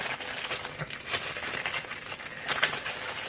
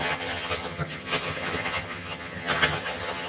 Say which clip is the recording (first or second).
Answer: first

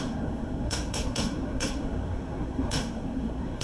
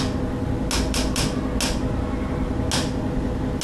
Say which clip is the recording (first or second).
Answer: second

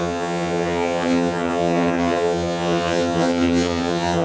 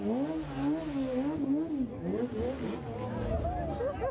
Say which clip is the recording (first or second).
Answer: second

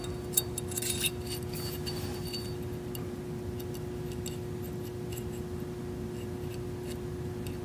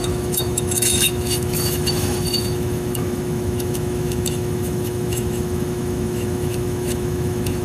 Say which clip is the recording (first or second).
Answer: first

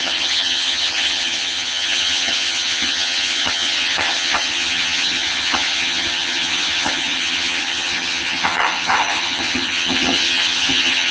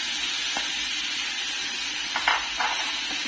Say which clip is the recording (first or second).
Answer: second